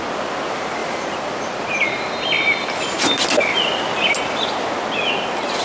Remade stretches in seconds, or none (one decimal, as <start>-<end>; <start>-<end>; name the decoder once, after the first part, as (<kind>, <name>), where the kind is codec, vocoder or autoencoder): 0.8-2.1 (vocoder, BigVGAN v2)